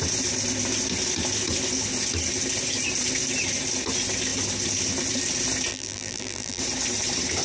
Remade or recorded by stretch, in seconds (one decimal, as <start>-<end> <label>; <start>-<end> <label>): 0.0-5.7 recorded; 5.7-6.6 remade; 6.6-7.4 recorded